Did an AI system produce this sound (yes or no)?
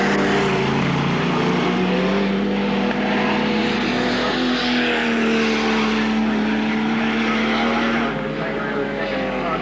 no